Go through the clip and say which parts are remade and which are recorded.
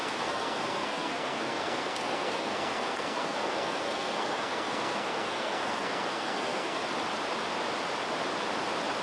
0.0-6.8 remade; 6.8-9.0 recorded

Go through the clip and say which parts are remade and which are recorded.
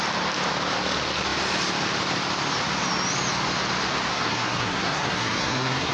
0.0-4.1 recorded; 4.1-5.9 remade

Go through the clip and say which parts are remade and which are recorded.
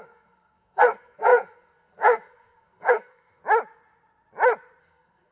0.0-3.4 remade; 3.4-4.8 recorded; 4.8-5.3 remade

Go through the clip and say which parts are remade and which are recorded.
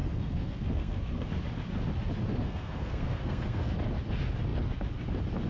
0.0-1.3 remade; 1.3-2.3 recorded; 2.3-3.7 remade; 3.7-5.5 recorded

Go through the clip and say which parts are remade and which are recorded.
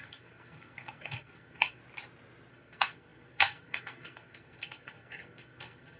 0.0-1.8 remade; 1.8-2.5 recorded; 2.5-6.0 remade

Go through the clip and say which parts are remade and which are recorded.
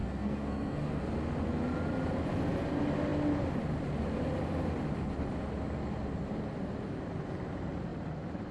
0.0-1.0 remade; 1.0-8.5 recorded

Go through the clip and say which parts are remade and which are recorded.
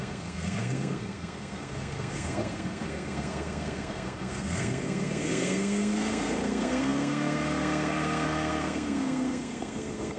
0.0-10.2 remade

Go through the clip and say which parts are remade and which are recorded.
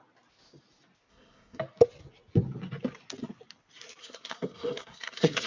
0.0-1.1 recorded; 1.1-1.6 remade; 1.6-4.0 recorded; 4.0-5.5 remade